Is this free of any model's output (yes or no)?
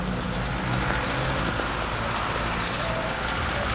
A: yes